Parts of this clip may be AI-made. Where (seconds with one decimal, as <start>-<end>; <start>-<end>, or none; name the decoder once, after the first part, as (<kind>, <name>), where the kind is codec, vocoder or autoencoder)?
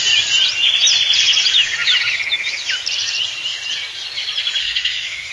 4.6-5.3 (codec, SNAC)